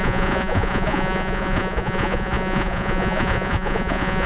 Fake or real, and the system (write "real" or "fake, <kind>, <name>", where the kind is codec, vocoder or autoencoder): fake, vocoder, Vocos